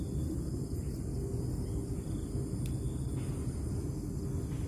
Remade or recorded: recorded